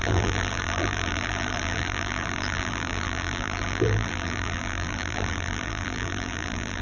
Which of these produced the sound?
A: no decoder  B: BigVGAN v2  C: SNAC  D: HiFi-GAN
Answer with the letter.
B